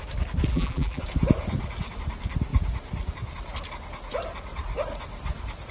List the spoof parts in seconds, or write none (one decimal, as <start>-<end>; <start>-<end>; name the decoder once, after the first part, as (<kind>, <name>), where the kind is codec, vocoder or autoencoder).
0.5-1.0 (vocoder, BigVGAN v2)